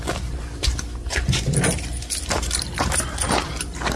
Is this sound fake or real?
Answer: fake